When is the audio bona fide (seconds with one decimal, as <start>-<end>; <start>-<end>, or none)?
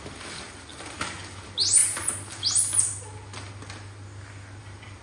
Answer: 0.0-5.0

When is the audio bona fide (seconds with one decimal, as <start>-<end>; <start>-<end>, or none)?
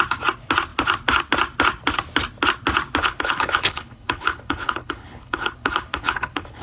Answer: 0.0-3.0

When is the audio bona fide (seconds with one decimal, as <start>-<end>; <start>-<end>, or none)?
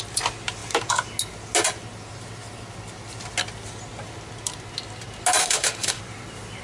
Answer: 0.0-5.4; 6.0-6.6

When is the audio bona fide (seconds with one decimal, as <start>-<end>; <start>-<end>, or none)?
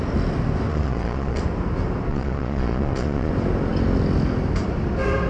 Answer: 0.0-0.7; 1.4-2.1; 3.3-5.3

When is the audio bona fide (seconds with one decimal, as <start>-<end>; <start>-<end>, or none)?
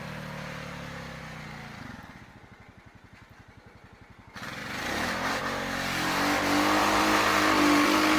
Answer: 0.0-4.6; 5.4-6.8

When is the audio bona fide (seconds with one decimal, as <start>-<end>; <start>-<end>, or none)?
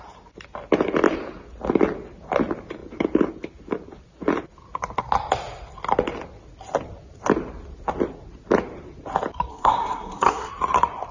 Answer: 0.0-9.5; 10.5-11.1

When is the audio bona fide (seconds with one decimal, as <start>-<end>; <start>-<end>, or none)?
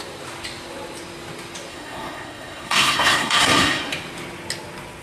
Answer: 0.0-1.7; 3.8-5.0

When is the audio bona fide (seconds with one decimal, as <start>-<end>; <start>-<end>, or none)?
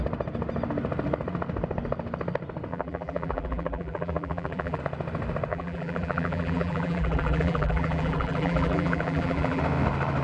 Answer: 0.0-2.7; 4.8-5.5; 9.6-10.2